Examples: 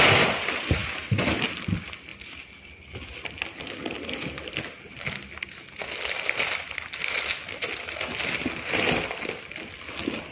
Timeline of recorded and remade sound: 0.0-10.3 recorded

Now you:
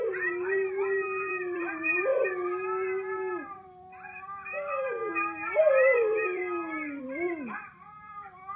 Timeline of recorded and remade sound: 0.0-2.1 remade; 2.1-3.3 recorded; 3.3-5.0 remade; 5.0-5.6 recorded; 5.6-6.4 remade; 6.4-7.0 recorded; 7.0-8.6 remade

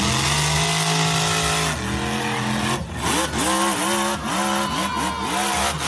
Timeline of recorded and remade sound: 0.0-5.9 recorded

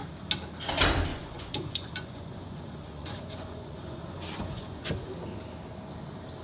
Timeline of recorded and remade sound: 0.0-1.1 recorded; 1.1-4.9 remade; 4.9-6.4 recorded

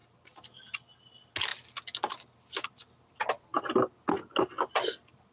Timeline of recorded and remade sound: 0.0-5.3 recorded